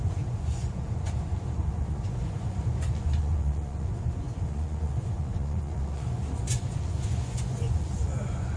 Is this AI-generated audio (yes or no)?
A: yes